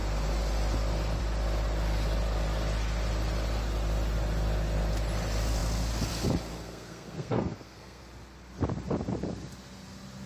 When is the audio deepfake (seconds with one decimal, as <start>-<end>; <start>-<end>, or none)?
6.5-8.0